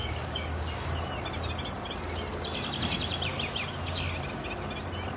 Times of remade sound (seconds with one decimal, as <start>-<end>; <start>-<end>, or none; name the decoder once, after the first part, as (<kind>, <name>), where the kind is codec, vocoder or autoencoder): 0.0-0.9 (codec, DAC)